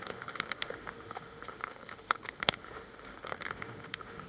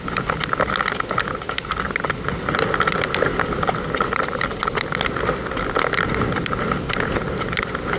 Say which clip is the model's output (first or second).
first